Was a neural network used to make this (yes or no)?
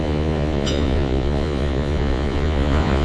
yes